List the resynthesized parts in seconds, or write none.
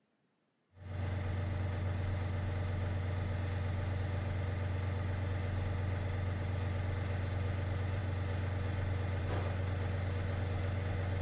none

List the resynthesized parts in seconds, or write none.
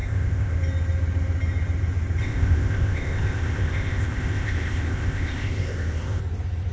0.0-0.6 (codec, ZipCodec); 2.2-6.2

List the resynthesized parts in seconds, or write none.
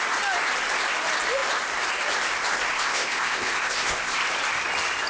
2.7-4.2 (codec, ZipCodec)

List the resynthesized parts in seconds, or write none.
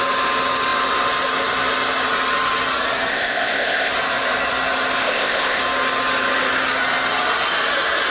3.1-3.9 (codec, ZipCodec); 5.0-5.6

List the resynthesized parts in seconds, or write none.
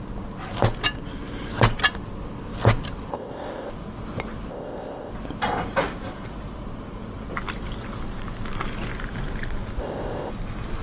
3.1-3.7 (codec, ZipCodec); 4.5-5.1; 9.8-10.3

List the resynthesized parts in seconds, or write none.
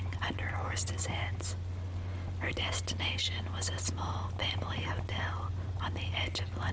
none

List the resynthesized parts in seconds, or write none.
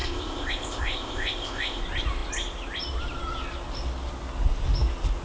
0.0-1.8 (codec, ZipCodec)